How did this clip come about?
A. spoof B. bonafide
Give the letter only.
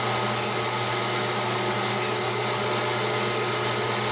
B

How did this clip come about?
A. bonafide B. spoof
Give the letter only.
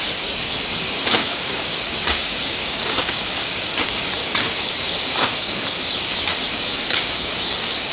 B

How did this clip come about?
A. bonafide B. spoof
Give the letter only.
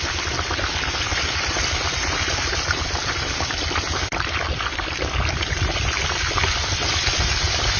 B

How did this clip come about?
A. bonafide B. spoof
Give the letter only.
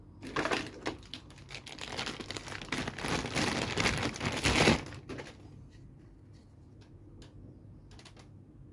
A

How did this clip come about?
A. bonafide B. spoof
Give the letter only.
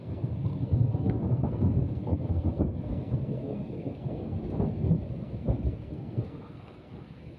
B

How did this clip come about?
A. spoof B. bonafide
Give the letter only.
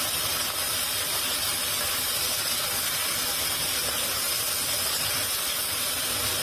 B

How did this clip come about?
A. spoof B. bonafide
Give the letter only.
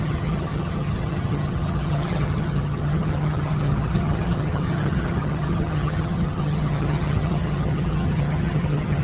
A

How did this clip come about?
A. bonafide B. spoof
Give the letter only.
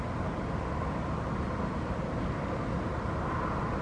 A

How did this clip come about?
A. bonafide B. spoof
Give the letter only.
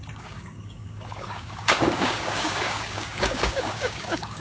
B